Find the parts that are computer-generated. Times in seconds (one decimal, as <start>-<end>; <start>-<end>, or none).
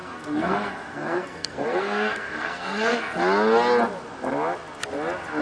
0.0-3.2